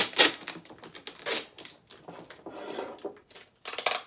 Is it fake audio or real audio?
real